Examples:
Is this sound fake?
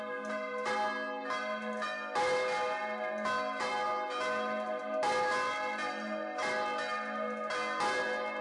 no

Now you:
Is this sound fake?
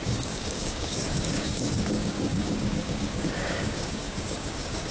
yes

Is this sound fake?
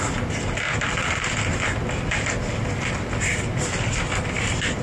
no